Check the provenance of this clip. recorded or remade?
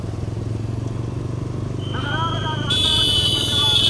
recorded